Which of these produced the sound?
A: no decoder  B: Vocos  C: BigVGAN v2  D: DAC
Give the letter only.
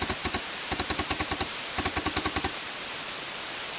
C